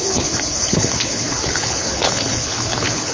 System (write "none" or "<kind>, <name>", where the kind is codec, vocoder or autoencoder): codec, HILCodec